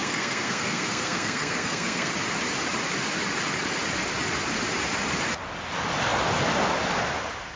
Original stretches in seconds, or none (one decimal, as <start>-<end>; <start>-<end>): 2.1-7.6